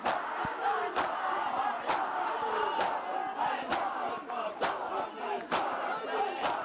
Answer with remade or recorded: recorded